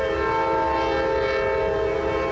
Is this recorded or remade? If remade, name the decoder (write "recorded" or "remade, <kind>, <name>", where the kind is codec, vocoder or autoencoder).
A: recorded